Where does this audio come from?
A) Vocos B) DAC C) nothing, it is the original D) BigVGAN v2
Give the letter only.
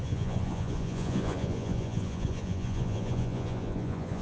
A